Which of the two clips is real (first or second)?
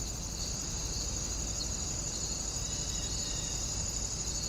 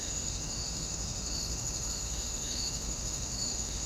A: first